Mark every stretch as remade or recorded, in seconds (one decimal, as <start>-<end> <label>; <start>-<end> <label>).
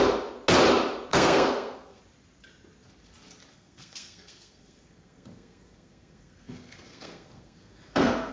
0.0-1.1 recorded; 1.1-2.0 remade; 2.0-3.5 recorded; 3.5-8.3 remade